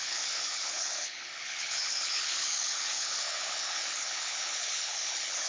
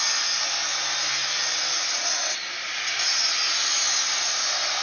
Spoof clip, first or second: first